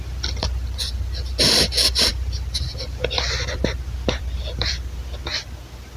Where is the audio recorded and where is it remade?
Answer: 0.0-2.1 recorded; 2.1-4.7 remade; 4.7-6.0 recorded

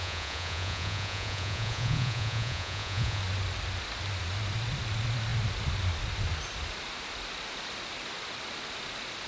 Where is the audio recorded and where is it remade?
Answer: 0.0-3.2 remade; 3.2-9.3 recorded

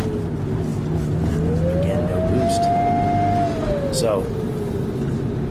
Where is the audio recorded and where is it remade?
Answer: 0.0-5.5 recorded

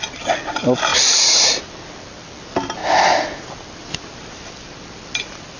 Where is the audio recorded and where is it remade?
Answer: 0.0-5.6 recorded

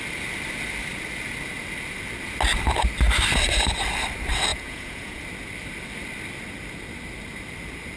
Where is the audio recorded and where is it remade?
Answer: 0.0-4.5 recorded; 4.5-5.2 remade; 5.2-8.0 recorded

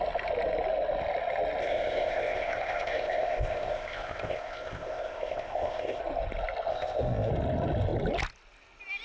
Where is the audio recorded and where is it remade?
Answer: 0.0-1.6 recorded; 1.6-6.0 remade; 6.0-6.7 recorded; 6.7-7.3 remade; 7.3-9.0 recorded